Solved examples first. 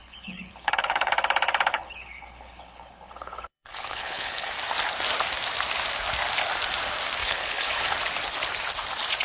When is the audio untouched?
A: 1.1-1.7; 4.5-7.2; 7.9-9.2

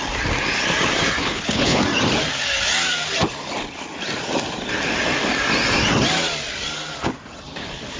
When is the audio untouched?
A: 0.0-1.2; 1.8-8.0

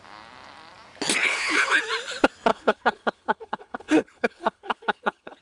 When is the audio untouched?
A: 0.0-1.2; 1.8-2.5

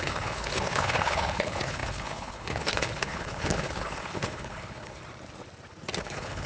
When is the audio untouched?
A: 5.0-6.0

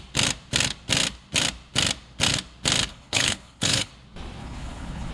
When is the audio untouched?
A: 0.0-2.9; 3.9-4.4

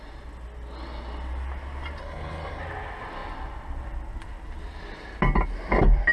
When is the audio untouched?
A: 0.0-2.0; 2.6-6.1